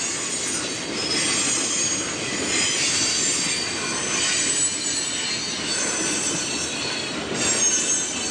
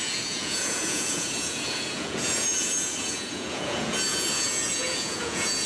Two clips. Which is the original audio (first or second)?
first